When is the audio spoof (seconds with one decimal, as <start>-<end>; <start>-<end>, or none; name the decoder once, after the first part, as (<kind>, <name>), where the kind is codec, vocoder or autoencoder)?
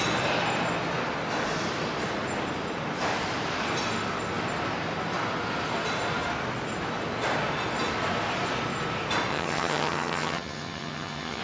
9.3-11.4 (vocoder, HiFi-GAN)